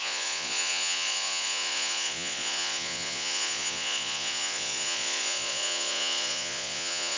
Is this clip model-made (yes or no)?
yes